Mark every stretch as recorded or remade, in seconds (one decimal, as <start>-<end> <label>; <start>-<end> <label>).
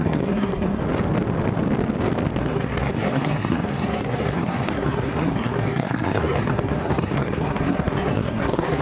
0.0-0.8 remade; 0.8-2.4 recorded; 2.4-8.8 remade